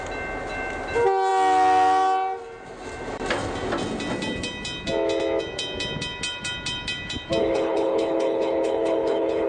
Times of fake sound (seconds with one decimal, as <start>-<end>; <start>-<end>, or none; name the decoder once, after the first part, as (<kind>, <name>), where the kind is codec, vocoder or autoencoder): 7.4-9.5 (codec, HILCodec)